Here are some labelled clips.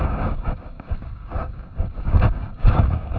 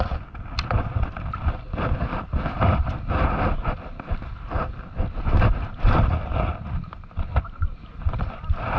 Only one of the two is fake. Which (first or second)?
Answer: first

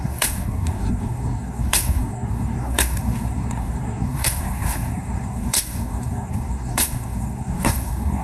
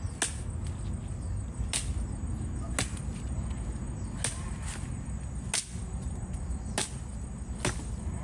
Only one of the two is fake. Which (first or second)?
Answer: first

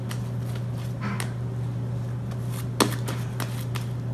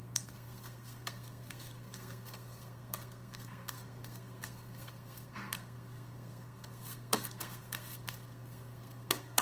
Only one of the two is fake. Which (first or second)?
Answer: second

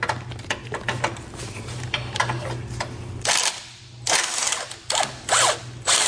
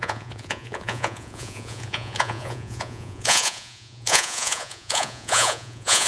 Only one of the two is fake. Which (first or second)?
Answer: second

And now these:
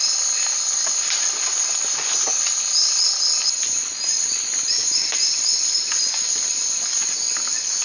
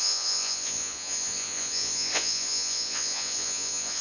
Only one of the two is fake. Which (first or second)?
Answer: second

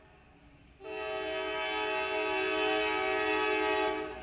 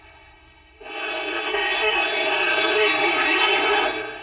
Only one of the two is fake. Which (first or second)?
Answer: second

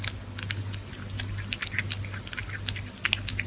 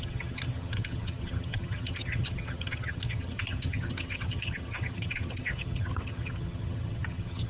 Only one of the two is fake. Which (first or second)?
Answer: second